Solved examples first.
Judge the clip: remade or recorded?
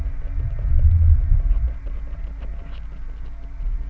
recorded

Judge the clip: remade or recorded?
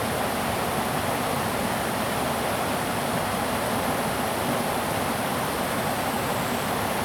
recorded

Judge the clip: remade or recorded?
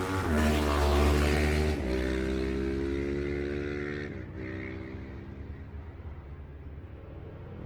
recorded